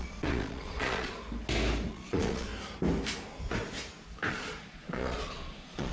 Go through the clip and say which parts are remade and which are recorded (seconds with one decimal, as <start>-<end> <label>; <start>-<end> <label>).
0.0-1.2 remade; 1.2-1.9 recorded; 1.9-2.5 remade; 2.5-4.3 recorded; 4.3-5.9 remade